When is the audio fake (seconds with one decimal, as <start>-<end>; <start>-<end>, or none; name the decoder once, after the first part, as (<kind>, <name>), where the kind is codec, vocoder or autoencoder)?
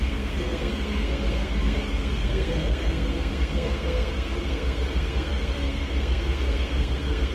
0.0-7.3 (codec, SNAC)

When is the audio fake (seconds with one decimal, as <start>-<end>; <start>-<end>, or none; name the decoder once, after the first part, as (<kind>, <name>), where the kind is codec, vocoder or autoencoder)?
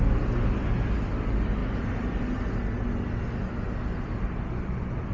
none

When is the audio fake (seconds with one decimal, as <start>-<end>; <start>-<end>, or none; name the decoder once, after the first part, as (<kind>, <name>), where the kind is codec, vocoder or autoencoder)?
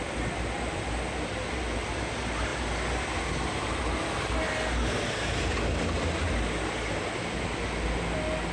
none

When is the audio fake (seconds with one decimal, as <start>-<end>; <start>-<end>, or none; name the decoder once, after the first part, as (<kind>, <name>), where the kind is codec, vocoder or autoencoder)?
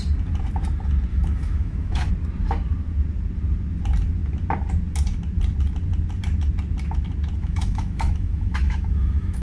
1.1-2.1 (autoencoder, DAC-VAE); 7.4-9.4